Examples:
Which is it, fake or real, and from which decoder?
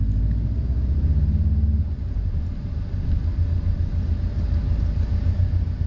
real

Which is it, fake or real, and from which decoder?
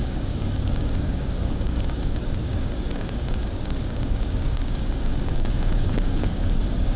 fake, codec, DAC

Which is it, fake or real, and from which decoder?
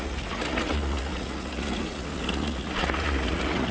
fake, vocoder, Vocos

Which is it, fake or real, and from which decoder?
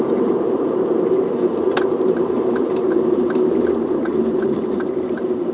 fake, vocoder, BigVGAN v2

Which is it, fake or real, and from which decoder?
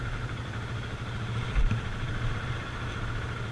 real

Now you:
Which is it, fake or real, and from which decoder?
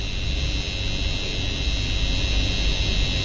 real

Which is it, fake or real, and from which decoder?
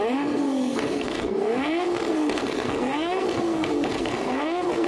fake, codec, SNAC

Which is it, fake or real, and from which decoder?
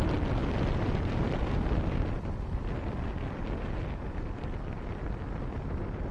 real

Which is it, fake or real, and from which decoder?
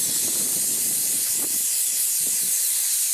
real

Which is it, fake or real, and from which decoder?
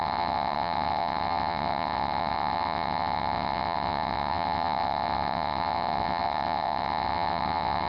fake, vocoder, WaveNeXt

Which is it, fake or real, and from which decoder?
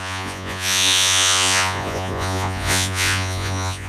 fake, vocoder, Vocos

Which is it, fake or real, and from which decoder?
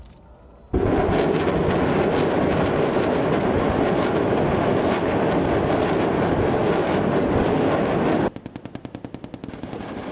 real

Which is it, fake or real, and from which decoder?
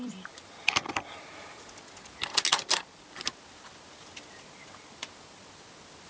real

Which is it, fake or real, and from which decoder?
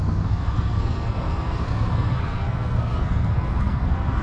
fake, codec, SNAC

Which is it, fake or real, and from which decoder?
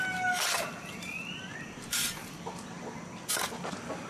real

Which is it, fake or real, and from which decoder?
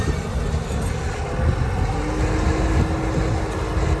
real